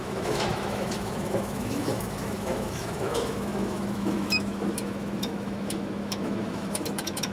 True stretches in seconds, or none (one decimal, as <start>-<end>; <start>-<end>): none